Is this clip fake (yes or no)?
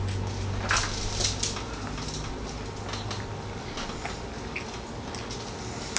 no